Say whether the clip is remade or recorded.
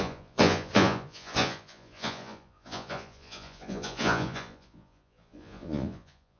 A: remade